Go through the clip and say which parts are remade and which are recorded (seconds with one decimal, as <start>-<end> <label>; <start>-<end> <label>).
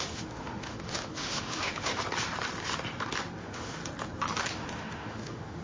0.0-2.0 remade; 2.0-3.4 recorded; 3.4-3.8 remade; 3.8-4.4 recorded; 4.4-5.6 remade